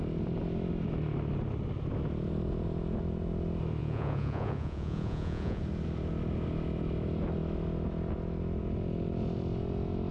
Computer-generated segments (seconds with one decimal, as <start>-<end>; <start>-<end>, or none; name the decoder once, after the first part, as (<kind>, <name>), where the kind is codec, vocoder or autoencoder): 3.8-5.6 (vocoder, Vocos)